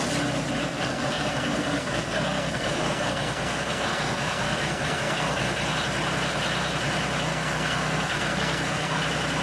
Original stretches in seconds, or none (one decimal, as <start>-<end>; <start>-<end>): 0.0-0.6; 5.6-7.3; 9.0-9.4